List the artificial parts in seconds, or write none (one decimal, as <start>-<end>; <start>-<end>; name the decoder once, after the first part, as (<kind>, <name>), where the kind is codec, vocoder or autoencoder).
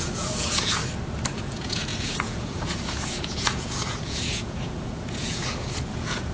0.0-0.8 (vocoder, Vocos); 1.4-6.3